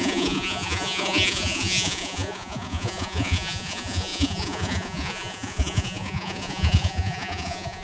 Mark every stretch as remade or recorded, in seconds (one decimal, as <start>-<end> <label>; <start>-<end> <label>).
0.0-7.8 remade